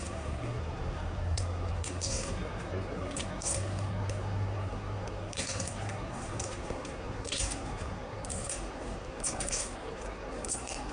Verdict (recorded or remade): remade